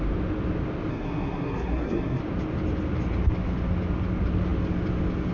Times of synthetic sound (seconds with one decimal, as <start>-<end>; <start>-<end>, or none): 0.9-2.2